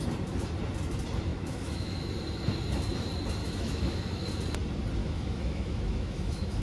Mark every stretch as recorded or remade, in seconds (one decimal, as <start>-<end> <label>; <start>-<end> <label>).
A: 0.0-1.3 recorded; 1.3-2.1 remade; 2.1-3.4 recorded; 3.4-4.3 remade; 4.3-5.0 recorded; 5.0-6.6 remade